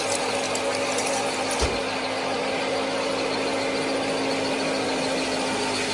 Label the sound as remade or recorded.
recorded